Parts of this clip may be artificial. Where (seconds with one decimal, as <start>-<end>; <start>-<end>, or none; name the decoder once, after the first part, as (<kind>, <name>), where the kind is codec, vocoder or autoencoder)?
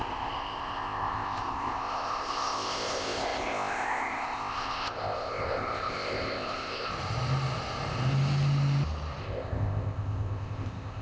0.0-6.9 (codec, ZipCodec); 9.2-11.0